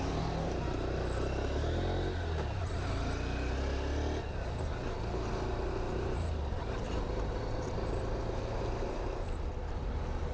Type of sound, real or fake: real